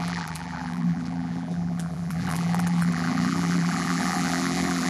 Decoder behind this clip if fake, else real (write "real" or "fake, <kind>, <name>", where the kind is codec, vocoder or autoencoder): fake, vocoder, BigVGAN v2